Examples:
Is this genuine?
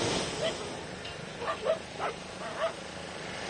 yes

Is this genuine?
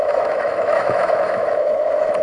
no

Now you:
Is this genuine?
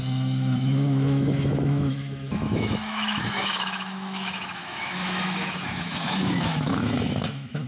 no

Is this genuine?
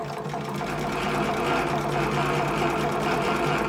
yes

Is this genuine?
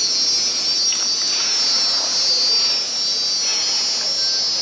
yes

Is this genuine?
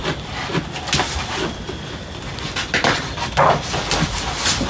yes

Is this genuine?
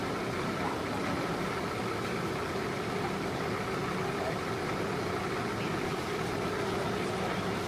yes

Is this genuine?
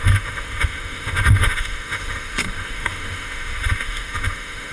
no